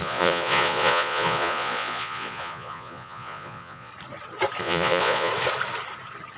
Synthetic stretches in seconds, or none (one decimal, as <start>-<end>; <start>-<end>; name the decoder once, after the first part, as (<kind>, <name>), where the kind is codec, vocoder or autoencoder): 0.0-3.9 (vocoder, Vocos); 4.6-5.3